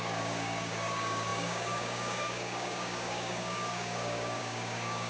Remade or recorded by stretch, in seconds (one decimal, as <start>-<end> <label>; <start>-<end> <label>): 0.0-5.1 remade